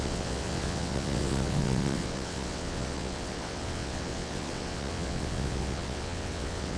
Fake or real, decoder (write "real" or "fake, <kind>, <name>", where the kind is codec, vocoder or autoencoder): fake, vocoder, WaveNeXt